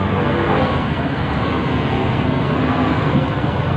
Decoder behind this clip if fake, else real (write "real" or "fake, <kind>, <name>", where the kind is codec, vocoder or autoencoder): fake, codec, SNAC